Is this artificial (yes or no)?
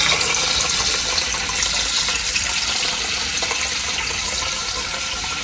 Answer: no